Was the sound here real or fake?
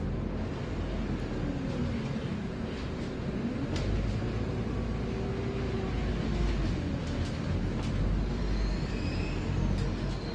real